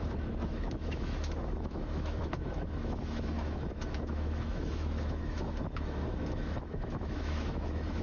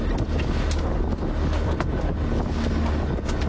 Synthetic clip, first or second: first